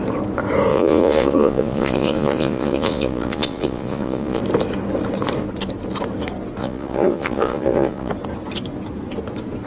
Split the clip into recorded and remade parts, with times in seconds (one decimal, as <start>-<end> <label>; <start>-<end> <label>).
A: 0.0-0.7 recorded; 0.7-4.4 remade; 4.4-6.6 recorded; 6.6-8.1 remade; 8.1-9.7 recorded